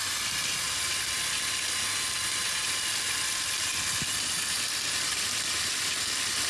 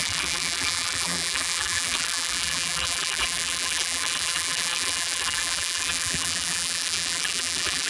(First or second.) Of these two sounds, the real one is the first